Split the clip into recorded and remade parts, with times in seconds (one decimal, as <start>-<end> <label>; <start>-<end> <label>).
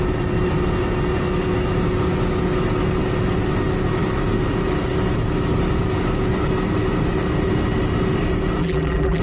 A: 0.0-8.6 recorded; 8.6-9.2 remade